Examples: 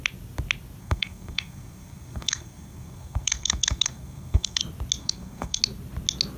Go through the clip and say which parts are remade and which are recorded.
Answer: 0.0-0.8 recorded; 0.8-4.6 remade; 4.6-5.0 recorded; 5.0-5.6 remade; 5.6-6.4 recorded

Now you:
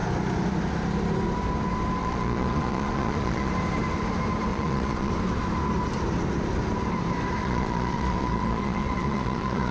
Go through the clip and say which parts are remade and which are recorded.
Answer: 0.0-2.0 recorded; 2.0-3.5 remade; 3.5-4.5 recorded; 4.5-5.1 remade; 5.1-7.4 recorded; 7.4-9.7 remade

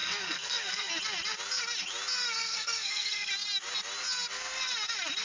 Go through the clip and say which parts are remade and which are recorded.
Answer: 0.0-0.9 remade; 0.9-2.4 recorded; 2.4-3.3 remade; 3.3-5.2 recorded